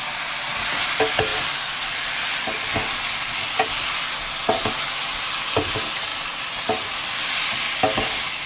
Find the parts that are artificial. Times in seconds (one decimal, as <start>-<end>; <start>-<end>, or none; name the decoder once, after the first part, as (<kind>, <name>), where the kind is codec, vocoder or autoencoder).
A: none

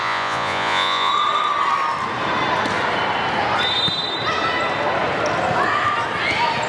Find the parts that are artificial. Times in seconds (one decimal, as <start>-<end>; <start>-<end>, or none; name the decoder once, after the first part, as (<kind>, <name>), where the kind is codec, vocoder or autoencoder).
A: 0.0-1.1 (vocoder, Vocos)